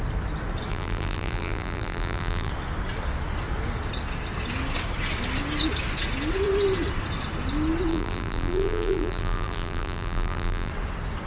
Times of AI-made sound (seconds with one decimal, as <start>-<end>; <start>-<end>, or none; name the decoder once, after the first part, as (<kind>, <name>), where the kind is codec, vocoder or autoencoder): 0.7-2.5 (vocoder, BigVGAN v2); 7.9-10.7